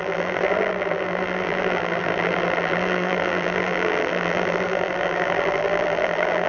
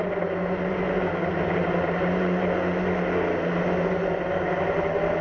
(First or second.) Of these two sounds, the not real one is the first